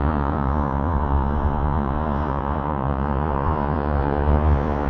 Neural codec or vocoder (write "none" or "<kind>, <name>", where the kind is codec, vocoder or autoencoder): vocoder, Vocos